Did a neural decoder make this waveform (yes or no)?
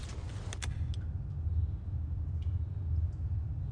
no